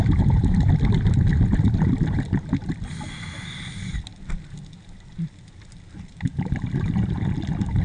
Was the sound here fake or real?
real